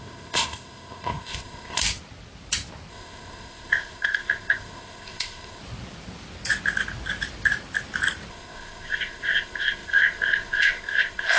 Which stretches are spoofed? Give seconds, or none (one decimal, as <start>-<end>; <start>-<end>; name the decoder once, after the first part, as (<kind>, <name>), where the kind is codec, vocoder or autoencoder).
0.0-1.8 (codec, ZipCodec); 2.9-5.6; 8.3-11.4